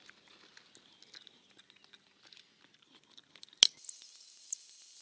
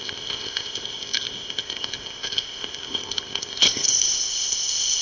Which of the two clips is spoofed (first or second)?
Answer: second